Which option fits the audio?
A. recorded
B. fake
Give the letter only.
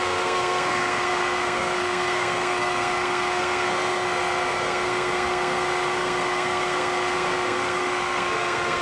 B